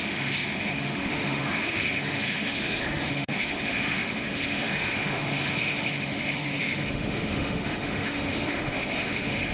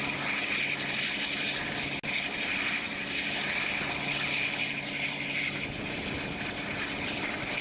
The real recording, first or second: second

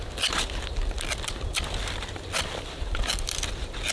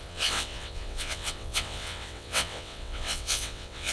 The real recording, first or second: first